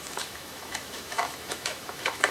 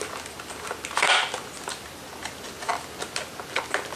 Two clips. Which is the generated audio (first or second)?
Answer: first